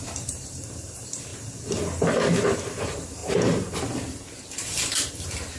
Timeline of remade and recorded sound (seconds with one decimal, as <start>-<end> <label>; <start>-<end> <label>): 0.0-1.3 remade; 1.3-2.6 recorded; 2.6-5.6 remade